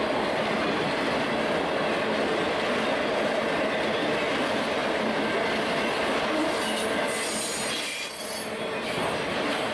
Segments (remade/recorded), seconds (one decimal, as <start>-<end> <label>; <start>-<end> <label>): 0.0-9.7 recorded

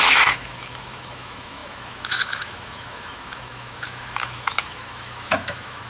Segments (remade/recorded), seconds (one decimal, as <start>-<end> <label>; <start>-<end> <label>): 0.0-5.9 remade

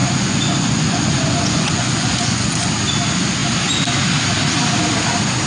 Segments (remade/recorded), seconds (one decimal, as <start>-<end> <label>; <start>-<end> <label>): 0.0-2.7 remade; 2.7-5.5 recorded

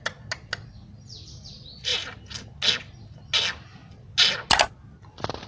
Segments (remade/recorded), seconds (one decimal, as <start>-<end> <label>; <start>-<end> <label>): 0.0-5.5 recorded

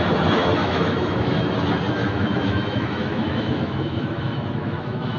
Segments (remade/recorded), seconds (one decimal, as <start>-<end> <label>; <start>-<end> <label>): 0.0-0.6 recorded; 0.6-1.5 remade; 1.5-2.0 recorded; 2.0-5.2 remade

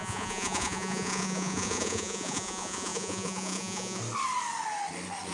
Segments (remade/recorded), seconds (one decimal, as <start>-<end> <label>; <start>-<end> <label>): 0.0-4.0 remade; 4.0-5.3 recorded

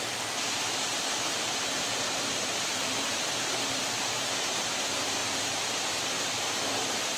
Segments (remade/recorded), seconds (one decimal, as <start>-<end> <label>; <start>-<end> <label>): 0.0-1.3 recorded; 1.3-3.9 remade; 3.9-5.2 recorded; 5.2-6.3 remade; 6.3-7.2 recorded